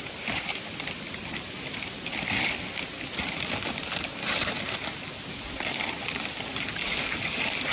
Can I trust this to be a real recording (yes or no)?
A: yes